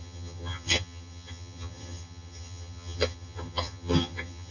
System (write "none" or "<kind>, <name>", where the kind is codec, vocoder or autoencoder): vocoder, HiFi-GAN